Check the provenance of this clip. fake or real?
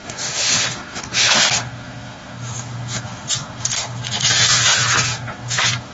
fake